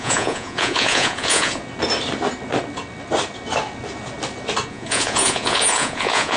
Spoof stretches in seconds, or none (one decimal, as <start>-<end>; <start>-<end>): 0.0-1.6; 4.7-6.4